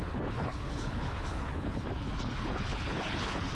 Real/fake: fake